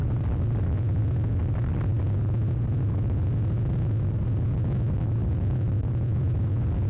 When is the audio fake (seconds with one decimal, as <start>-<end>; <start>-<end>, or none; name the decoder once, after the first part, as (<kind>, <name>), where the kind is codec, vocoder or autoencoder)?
0.0-1.0 (vocoder, BigVGAN v2); 5.2-6.5